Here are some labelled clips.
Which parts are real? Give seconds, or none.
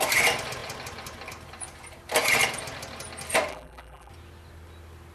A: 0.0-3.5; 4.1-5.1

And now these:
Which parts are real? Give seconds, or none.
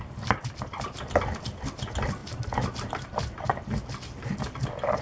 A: 0.0-5.0